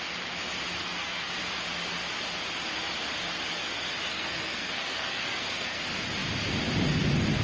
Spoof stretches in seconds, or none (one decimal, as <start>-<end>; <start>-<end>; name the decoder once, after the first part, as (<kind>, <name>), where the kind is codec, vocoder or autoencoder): 0.8-1.3 (codec, SNAC); 4.1-5.8